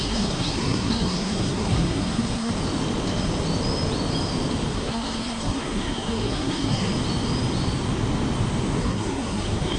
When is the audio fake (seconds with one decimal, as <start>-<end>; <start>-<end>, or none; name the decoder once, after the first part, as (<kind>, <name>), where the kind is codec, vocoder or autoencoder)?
0.0-2.5 (codec, SNAC); 4.7-6.9; 8.8-9.8